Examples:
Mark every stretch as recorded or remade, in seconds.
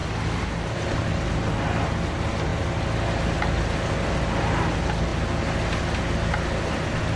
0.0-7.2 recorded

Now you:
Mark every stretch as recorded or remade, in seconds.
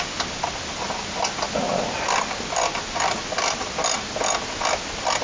0.0-5.2 recorded